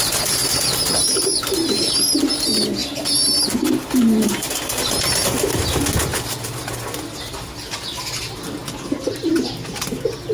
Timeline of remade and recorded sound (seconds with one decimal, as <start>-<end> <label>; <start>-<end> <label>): 0.0-10.3 recorded